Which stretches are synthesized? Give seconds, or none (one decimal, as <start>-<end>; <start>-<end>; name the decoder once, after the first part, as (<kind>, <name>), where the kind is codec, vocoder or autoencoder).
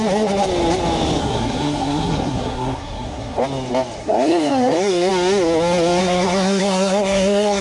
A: 1.2-3.4 (codec, SNAC); 4.0-5.1; 6.0-7.6